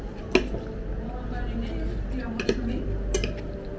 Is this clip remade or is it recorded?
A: recorded